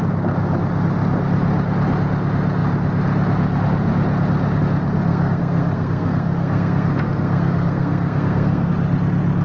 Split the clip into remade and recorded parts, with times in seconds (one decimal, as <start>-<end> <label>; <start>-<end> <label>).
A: 0.0-5.1 recorded; 5.1-8.7 remade; 8.7-9.4 recorded